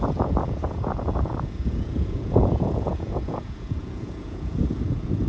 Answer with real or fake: fake